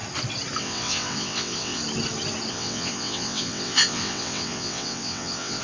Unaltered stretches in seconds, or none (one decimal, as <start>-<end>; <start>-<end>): 0.0-0.6; 1.8-2.5

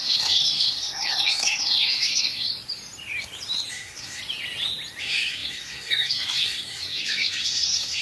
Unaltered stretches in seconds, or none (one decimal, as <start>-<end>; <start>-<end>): 2.5-3.7; 4.2-5.0

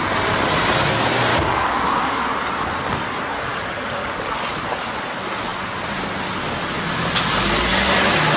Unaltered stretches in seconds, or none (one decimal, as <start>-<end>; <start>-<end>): 0.0-1.3; 2.2-3.5; 4.4-8.4

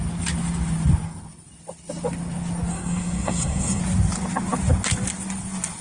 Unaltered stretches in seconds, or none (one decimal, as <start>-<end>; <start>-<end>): 0.0-2.7; 3.8-5.8